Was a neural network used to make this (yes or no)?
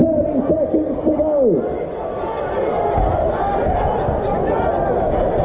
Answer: no